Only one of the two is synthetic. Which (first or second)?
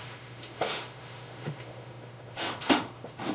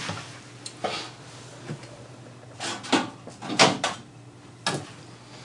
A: first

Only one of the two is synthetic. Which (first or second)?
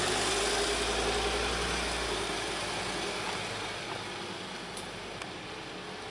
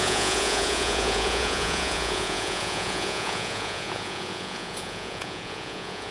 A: second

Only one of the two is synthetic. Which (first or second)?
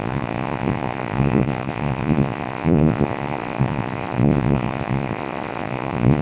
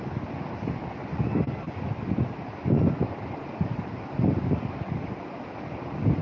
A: first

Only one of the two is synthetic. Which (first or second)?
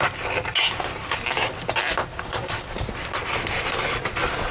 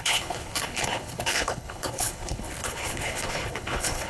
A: second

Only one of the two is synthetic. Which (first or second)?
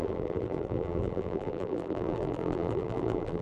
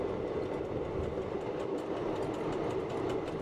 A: first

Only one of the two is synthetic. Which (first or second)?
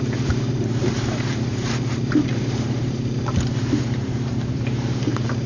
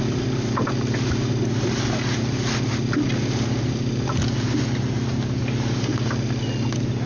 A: first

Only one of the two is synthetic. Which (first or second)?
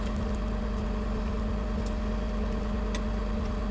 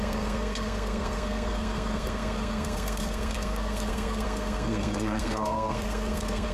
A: second